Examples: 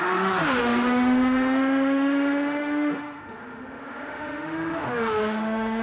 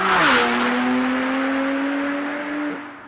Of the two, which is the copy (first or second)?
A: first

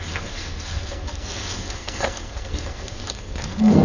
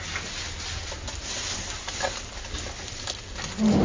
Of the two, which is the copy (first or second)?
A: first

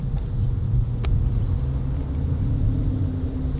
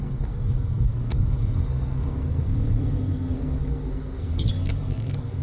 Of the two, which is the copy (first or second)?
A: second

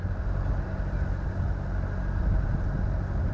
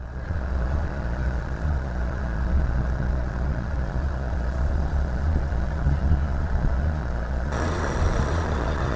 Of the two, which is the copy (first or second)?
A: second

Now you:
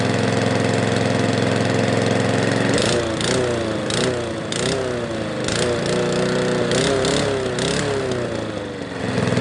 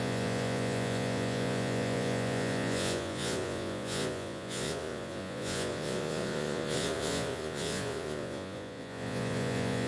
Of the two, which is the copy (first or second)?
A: second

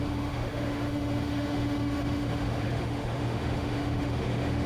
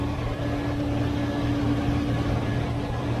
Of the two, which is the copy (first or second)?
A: first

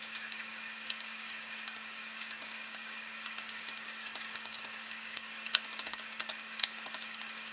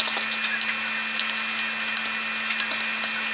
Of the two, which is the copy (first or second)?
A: first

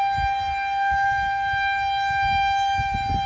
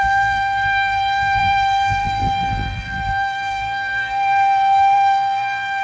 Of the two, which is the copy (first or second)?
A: second